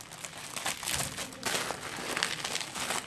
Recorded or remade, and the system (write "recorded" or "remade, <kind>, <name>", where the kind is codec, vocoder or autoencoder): recorded